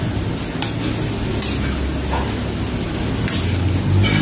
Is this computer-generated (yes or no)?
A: no